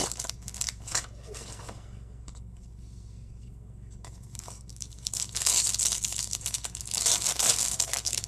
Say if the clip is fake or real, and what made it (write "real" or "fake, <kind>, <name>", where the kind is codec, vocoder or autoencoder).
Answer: fake, codec, SNAC